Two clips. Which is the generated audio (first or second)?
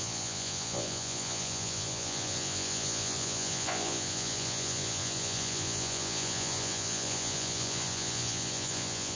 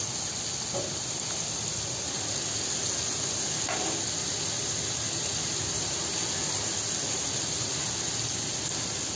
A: first